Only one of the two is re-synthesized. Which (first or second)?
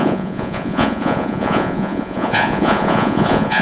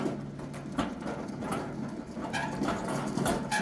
first